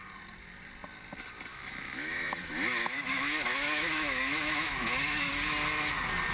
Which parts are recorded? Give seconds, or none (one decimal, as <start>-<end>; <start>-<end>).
0.0-1.5; 5.3-6.3